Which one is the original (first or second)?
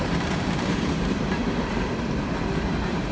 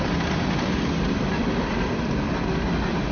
second